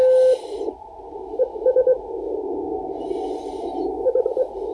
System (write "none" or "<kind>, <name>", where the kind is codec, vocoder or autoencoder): none